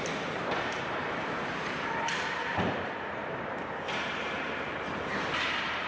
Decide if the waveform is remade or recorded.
remade